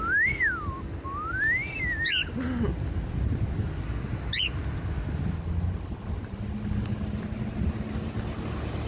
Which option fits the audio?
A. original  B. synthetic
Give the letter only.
A